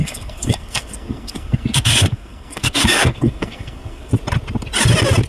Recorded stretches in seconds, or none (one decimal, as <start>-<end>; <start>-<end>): 4.1-5.3